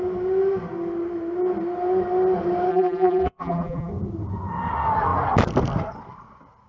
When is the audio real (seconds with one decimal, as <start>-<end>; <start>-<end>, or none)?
0.0-2.7; 3.9-6.7